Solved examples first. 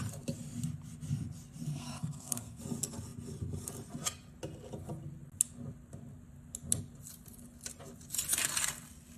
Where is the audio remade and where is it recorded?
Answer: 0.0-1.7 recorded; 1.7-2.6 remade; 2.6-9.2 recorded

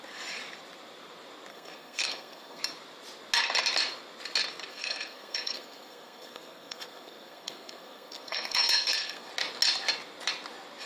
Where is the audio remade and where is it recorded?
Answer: 0.0-1.5 recorded; 1.5-2.6 remade; 2.6-4.7 recorded; 4.7-9.3 remade; 9.3-10.9 recorded

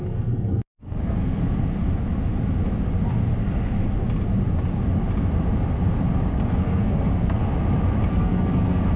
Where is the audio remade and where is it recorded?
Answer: 0.0-1.4 remade; 1.4-6.3 recorded; 6.3-7.4 remade; 7.4-8.1 recorded; 8.1-9.0 remade